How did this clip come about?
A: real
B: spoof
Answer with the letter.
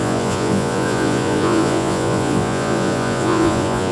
B